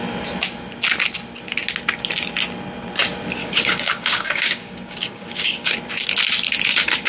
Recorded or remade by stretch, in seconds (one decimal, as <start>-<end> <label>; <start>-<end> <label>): 0.0-3.4 recorded; 3.4-5.7 remade; 5.7-7.1 recorded